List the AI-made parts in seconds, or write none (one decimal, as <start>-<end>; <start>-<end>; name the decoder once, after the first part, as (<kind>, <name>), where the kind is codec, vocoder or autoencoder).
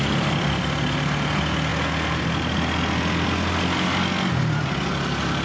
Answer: none